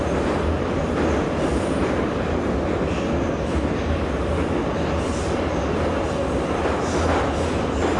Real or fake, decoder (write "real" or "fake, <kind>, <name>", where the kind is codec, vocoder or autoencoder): real